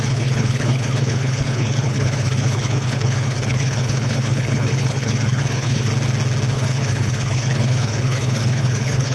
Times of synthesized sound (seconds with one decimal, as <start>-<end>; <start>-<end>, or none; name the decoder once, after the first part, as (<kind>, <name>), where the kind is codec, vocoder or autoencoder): 0.0-5.9 (codec, HILCodec); 6.5-9.1